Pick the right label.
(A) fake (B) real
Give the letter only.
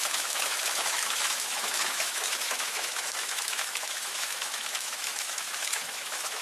A